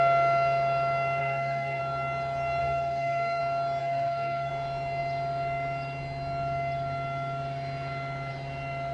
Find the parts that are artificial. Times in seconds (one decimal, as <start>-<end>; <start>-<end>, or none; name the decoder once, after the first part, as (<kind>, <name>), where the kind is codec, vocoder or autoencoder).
1.2-1.8 (codec, SNAC); 2.6-3.4; 3.8-4.5